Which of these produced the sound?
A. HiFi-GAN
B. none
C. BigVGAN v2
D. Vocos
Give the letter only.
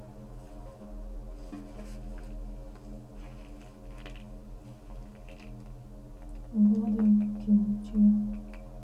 B